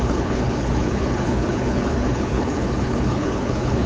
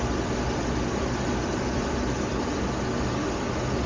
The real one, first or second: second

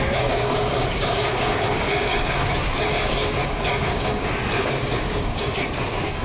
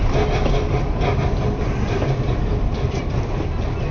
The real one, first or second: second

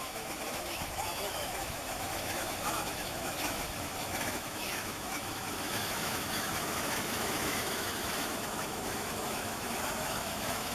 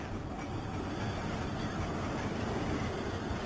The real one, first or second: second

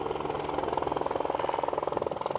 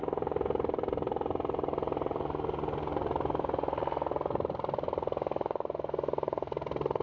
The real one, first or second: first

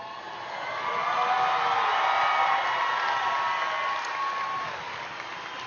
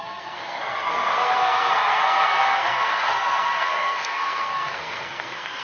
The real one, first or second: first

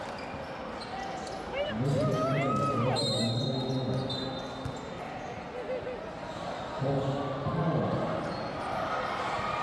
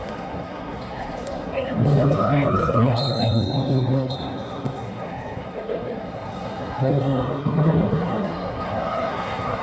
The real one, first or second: first